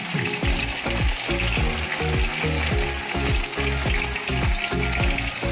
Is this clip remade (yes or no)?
no